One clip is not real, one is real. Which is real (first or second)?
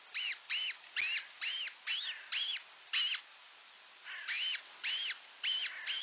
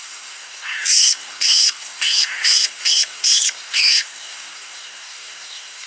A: first